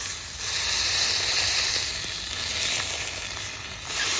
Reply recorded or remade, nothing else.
recorded